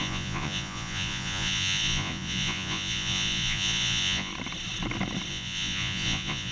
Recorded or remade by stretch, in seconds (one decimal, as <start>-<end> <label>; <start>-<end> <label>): 0.0-4.3 remade; 4.3-5.3 recorded; 5.3-6.5 remade